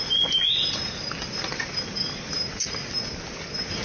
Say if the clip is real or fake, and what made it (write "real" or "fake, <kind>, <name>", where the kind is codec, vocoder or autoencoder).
real